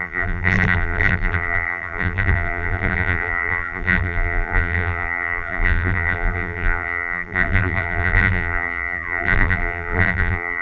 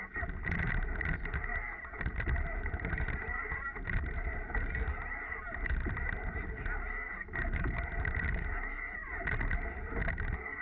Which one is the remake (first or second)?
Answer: first